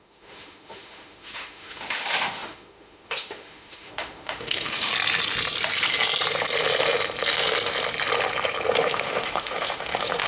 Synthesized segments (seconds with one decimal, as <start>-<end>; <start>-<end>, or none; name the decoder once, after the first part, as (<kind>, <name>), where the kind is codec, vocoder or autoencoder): 0.0-4.9 (autoencoder, DAC-VAE); 8.7-10.3